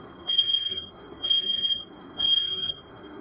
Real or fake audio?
fake